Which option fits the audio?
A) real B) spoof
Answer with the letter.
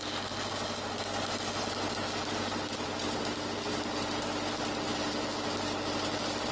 A